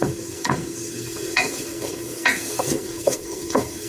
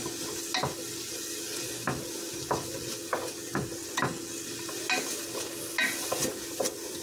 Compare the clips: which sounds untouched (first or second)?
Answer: second